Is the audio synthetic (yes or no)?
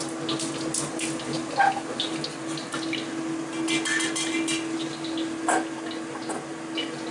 no